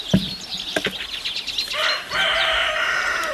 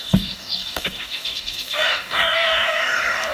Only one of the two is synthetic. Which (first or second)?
second